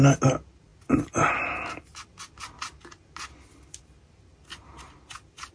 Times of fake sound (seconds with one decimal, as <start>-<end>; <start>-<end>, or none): none